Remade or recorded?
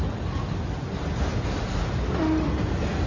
recorded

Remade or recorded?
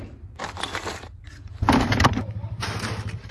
remade